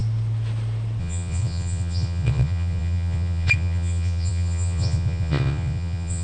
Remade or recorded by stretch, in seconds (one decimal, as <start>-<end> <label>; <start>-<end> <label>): 0.0-1.0 recorded; 1.0-6.2 remade

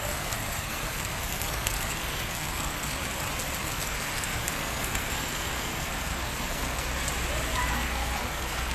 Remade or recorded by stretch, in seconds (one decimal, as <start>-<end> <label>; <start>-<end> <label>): 0.0-3.0 remade; 3.0-3.6 recorded; 3.6-7.0 remade; 7.0-7.7 recorded; 7.7-8.7 remade

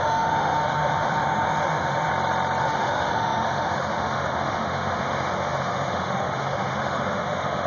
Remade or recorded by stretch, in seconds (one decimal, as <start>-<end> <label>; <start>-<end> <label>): 0.0-2.1 remade; 2.1-2.6 recorded; 2.6-7.7 remade

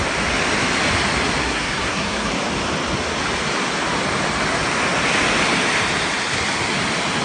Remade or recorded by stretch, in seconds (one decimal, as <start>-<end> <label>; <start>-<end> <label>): 0.0-1.4 recorded; 1.4-2.3 remade; 2.3-7.2 recorded

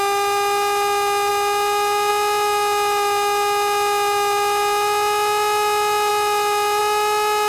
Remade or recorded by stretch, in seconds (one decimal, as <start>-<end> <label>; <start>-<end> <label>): 0.0-7.5 recorded

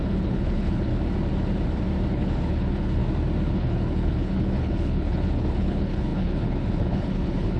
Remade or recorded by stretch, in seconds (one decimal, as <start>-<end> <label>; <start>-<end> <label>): 0.0-0.9 remade; 0.9-2.1 recorded; 2.1-3.0 remade; 3.0-3.5 recorded; 3.5-7.6 remade

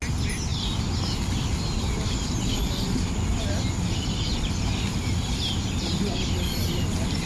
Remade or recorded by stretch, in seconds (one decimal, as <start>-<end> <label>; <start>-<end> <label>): 0.0-7.3 recorded

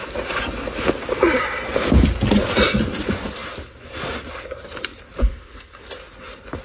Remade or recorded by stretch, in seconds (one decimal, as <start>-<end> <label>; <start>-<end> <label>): 0.0-5.2 recorded; 5.2-5.8 remade; 5.8-6.6 recorded